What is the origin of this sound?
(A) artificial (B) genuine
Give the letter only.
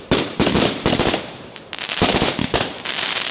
A